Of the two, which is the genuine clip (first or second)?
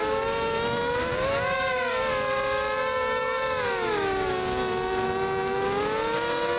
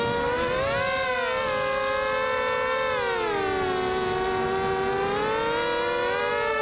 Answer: second